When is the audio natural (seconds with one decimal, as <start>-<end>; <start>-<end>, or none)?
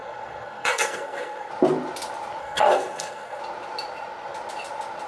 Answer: 1.5-2.4; 3.4-5.1